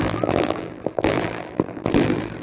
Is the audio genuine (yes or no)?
no